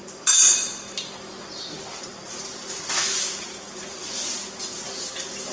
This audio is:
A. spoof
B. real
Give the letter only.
B